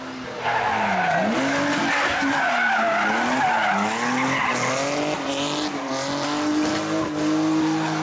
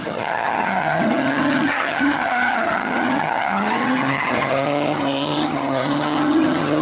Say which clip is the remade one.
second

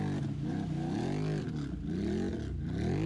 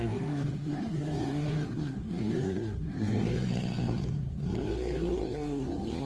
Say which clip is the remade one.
second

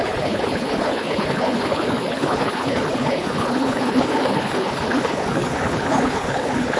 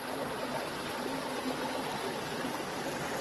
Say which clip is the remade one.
first